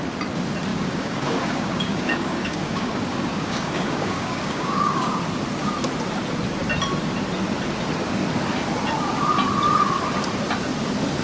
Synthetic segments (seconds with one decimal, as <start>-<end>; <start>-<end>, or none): 0.7-5.2